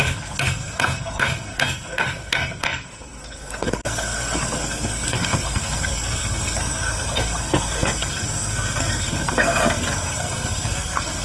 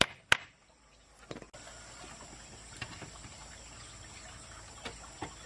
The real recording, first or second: second